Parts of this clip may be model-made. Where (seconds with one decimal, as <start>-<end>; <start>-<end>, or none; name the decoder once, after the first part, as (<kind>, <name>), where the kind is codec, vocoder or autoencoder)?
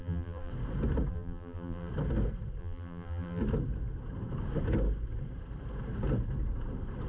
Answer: 0.0-0.5 (vocoder, BigVGAN v2); 1.1-1.9; 2.6-3.4